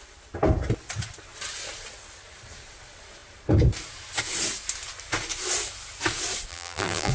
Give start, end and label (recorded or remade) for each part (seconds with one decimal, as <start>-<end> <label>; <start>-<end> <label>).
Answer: 0.0-6.5 recorded; 6.5-7.1 remade